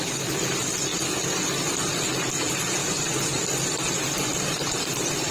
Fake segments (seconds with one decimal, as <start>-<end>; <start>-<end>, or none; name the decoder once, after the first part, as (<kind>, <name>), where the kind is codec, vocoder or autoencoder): 0.0-0.9 (vocoder, BigVGAN v2); 1.7-2.8; 3.4-5.3